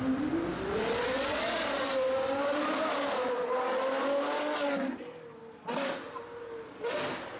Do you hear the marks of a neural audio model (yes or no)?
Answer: no